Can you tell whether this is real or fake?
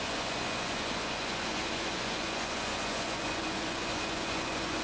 fake